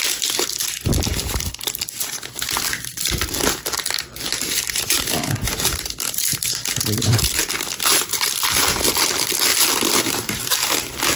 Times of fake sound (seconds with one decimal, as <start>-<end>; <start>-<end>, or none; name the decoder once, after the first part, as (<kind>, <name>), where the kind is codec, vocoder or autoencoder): 0.0-9.5 (vocoder, BigVGAN v2); 10.1-11.2